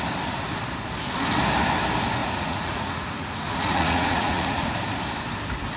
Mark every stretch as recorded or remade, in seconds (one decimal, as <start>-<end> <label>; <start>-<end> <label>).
0.0-2.2 recorded; 2.2-4.7 remade; 4.7-5.8 recorded

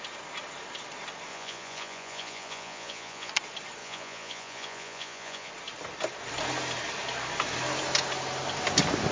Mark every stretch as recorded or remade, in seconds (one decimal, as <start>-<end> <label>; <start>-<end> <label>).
0.0-1.3 recorded; 1.3-3.3 remade; 3.3-3.8 recorded; 3.8-5.5 remade; 5.5-9.1 recorded

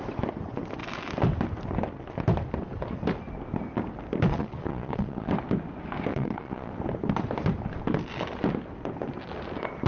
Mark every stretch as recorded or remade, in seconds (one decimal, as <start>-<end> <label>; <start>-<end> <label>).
0.0-4.3 recorded; 4.3-5.3 remade; 5.3-6.1 recorded; 6.1-6.7 remade; 6.7-9.9 recorded